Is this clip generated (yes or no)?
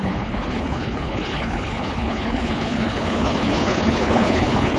yes